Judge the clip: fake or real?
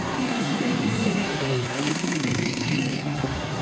fake